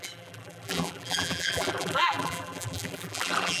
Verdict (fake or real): fake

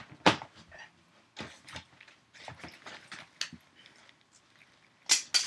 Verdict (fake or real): real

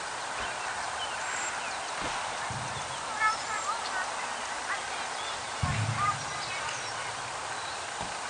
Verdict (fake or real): real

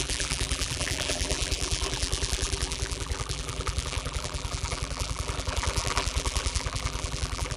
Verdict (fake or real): fake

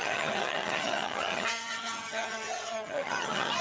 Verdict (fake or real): fake